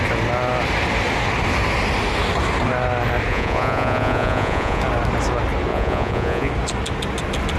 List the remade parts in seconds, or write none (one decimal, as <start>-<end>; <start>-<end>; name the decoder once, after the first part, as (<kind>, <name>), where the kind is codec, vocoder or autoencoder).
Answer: 3.3-4.8 (vocoder, Vocos); 5.7-6.5